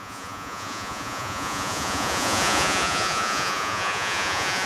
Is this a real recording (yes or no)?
no